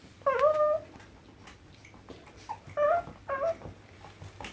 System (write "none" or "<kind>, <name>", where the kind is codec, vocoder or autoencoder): none